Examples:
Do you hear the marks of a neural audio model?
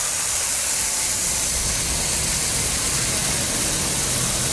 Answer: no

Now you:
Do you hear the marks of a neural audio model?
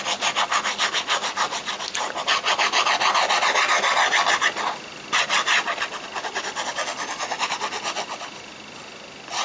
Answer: no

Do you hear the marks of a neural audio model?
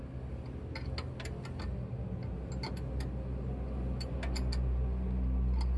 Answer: no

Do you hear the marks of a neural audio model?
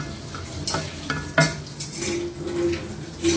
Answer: no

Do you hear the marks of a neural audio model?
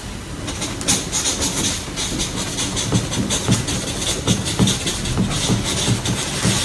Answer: no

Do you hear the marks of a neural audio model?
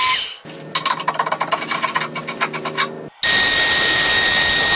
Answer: no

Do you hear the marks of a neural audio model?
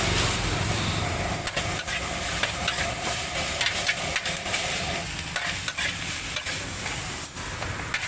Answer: no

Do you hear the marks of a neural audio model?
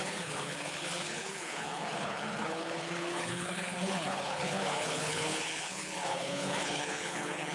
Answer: yes